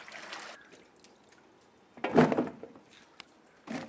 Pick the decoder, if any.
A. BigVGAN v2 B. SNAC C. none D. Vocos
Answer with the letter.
C